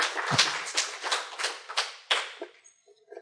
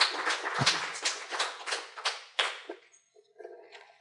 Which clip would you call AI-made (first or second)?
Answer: second